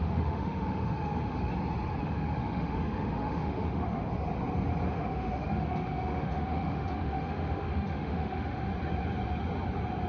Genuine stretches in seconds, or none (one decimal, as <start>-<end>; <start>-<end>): 1.5-2.0; 4.0-4.9; 8.7-10.1